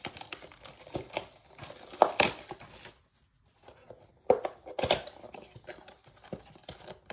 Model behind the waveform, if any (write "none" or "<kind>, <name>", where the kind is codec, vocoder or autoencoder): none